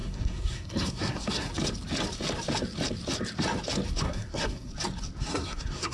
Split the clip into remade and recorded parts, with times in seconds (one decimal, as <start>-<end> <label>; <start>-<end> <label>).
0.0-1.5 remade; 1.5-4.0 recorded; 4.0-4.7 remade; 4.7-5.2 recorded; 5.2-5.9 remade